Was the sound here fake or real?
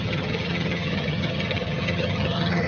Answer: fake